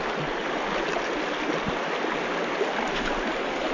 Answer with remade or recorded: recorded